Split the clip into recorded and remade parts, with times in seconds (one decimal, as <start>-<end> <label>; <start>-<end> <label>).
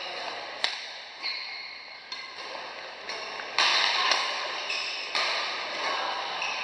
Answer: 0.0-1.6 recorded; 1.6-2.7 remade; 2.7-3.7 recorded; 3.7-5.1 remade; 5.1-6.6 recorded